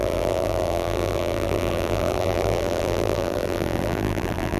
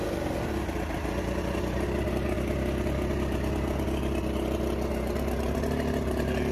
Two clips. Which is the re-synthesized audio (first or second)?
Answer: first